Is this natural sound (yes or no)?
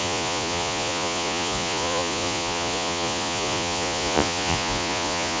no